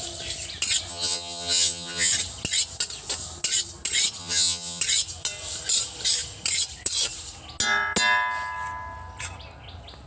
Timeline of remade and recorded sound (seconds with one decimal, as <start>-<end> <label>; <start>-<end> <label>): 0.0-0.9 recorded; 0.9-2.1 remade; 2.1-4.2 recorded; 4.2-4.8 remade; 4.8-10.1 recorded